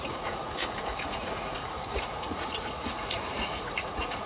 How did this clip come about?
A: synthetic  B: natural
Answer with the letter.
A